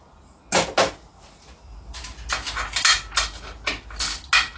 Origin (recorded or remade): recorded